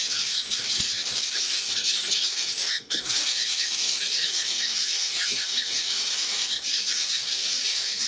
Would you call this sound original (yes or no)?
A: no